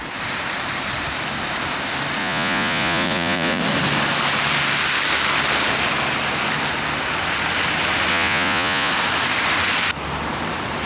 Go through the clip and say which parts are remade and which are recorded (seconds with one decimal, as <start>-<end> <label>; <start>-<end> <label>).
0.0-2.2 recorded; 2.2-3.6 remade; 3.6-8.1 recorded; 8.1-8.9 remade; 8.9-10.9 recorded